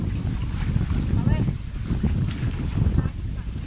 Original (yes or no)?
yes